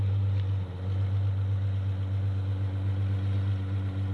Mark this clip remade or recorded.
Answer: recorded